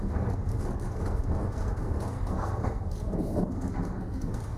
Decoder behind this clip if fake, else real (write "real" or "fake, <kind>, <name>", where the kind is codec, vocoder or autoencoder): fake, codec, SNAC